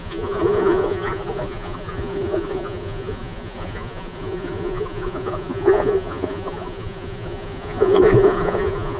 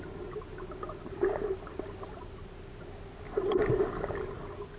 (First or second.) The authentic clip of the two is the second